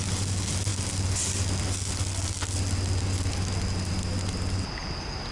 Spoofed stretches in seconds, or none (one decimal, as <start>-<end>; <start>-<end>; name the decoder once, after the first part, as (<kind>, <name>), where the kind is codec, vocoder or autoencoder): none